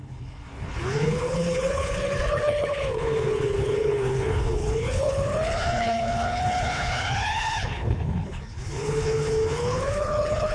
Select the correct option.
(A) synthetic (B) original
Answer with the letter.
A